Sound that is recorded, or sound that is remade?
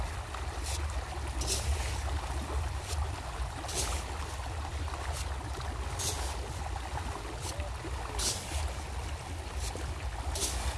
recorded